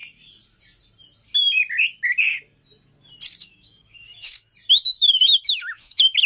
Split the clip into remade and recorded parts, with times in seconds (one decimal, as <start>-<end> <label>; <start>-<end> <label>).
0.0-3.4 recorded; 3.4-4.5 remade; 4.5-5.0 recorded; 5.0-6.3 remade